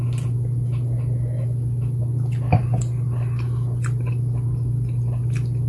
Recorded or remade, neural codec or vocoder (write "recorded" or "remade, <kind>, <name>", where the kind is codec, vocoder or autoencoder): recorded